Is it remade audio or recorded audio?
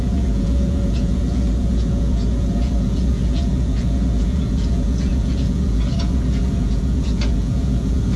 remade